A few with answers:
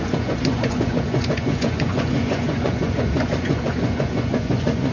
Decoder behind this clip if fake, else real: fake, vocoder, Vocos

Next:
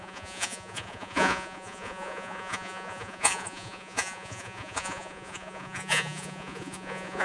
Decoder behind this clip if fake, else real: fake, vocoder, Vocos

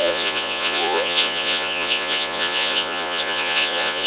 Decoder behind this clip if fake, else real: fake, vocoder, Vocos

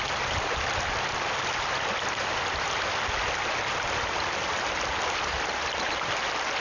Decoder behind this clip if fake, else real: real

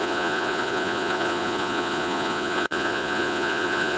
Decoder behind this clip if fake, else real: fake, vocoder, Vocos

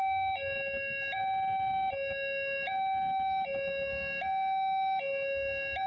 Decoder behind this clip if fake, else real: real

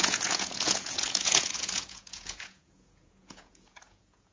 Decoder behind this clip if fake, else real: fake, vocoder, Vocos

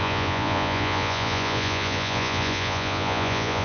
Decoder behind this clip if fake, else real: fake, vocoder, Vocos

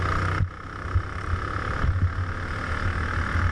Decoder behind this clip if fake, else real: real